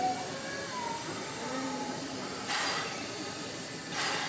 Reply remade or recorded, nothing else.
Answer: recorded